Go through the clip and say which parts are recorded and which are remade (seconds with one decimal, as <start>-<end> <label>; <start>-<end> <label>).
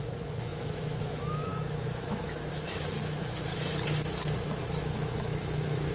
0.0-3.5 remade; 3.5-4.8 recorded; 4.8-5.9 remade